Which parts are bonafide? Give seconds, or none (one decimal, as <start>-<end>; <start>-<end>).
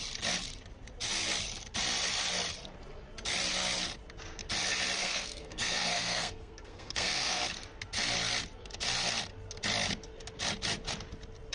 0.0-5.0; 7.4-11.5